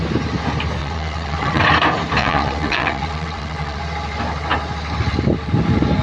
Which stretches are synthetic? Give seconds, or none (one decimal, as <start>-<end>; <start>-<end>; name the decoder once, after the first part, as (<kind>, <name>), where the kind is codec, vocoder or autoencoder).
0.8-1.6 (vocoder, WaveNeXt); 2.2-3.8